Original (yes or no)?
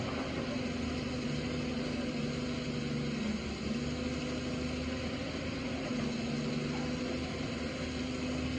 yes